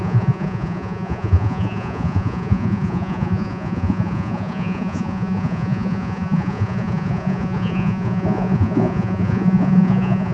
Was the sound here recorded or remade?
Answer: remade